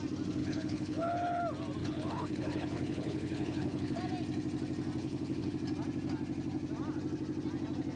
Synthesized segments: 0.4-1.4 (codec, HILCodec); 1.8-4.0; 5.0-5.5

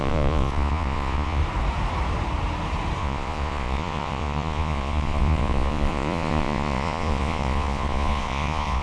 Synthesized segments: 0.0-1.4 (vocoder, Vocos); 3.0-8.8

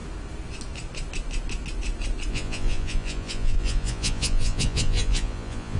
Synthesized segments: 2.3-5.8 (vocoder, Vocos)